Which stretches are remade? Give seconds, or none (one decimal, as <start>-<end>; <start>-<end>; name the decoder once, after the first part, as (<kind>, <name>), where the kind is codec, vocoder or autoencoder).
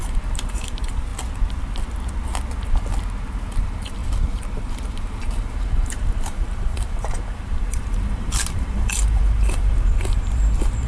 0.0-1.1 (vocoder, BigVGAN v2); 3.6-10.9